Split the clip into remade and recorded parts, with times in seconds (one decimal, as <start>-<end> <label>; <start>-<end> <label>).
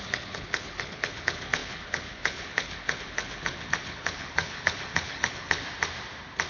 0.0-5.6 remade; 5.6-6.5 recorded